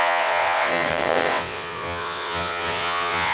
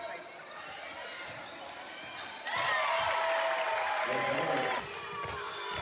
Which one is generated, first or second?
first